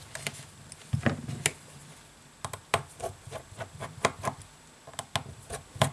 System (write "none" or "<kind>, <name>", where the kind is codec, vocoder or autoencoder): none